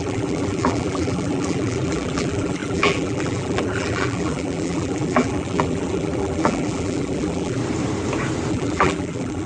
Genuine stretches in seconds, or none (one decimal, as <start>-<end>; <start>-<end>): 7.6-8.5